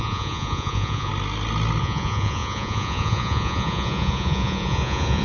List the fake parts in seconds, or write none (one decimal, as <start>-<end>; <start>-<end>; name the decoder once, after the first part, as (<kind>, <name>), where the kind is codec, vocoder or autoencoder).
0.0-1.1 (vocoder, Vocos); 1.8-5.2